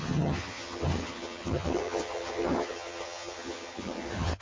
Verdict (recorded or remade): remade